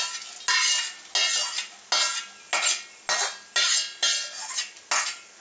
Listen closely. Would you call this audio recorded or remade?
recorded